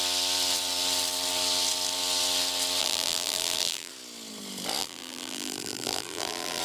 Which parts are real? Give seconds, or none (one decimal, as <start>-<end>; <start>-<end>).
0.0-2.8; 3.9-4.8